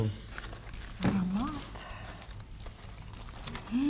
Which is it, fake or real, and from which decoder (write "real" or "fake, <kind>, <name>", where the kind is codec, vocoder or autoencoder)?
real